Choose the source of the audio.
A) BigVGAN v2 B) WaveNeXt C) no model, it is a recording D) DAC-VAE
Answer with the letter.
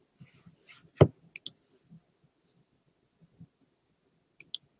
C